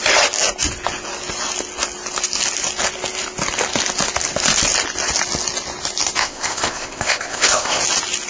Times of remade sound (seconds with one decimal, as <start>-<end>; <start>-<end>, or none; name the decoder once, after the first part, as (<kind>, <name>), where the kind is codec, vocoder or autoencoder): 6.2-7.8 (codec, ZipCodec)